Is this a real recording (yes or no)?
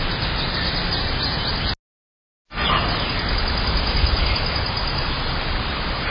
yes